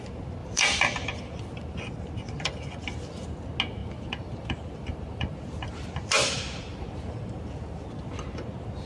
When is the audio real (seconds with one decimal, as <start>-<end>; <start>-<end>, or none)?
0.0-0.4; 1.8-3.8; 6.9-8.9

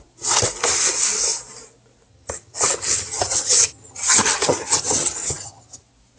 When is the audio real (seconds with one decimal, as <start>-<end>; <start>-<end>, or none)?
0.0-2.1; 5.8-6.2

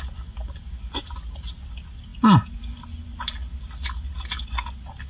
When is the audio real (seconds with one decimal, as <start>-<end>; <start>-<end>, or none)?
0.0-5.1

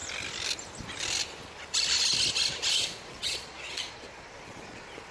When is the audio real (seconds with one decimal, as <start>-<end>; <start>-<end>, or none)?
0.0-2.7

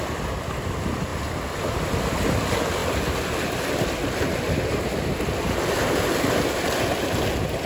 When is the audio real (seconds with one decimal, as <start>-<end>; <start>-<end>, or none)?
0.0-7.7

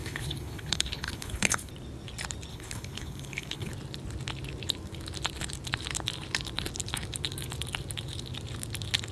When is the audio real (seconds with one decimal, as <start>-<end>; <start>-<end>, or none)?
1.7-2.5; 3.7-9.1

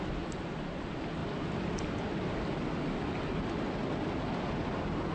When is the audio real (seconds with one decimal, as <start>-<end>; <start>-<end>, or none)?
0.0-5.1